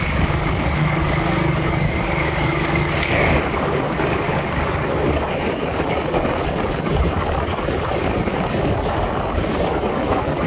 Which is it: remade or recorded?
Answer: remade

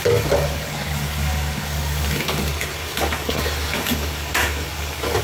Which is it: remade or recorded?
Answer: remade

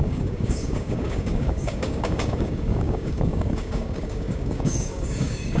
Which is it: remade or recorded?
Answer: remade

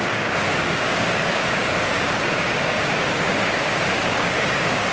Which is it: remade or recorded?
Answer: remade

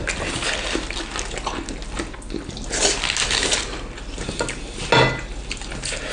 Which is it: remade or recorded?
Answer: recorded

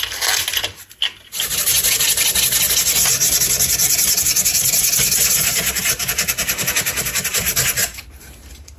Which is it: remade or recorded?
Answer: recorded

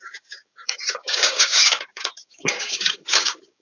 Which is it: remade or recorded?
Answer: remade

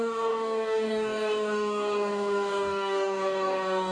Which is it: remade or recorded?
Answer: remade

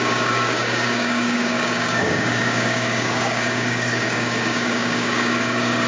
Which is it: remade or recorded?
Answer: remade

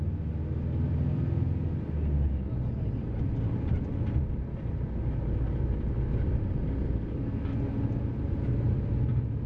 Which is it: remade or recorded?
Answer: recorded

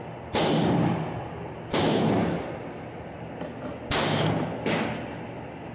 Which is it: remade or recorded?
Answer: recorded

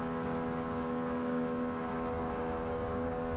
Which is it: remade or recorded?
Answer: remade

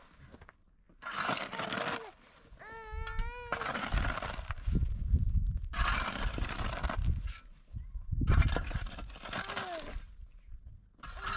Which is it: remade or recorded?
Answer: recorded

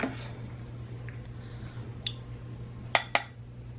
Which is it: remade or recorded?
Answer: recorded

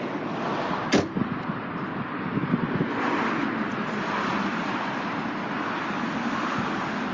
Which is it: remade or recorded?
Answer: recorded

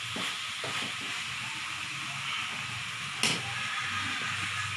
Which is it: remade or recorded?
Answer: recorded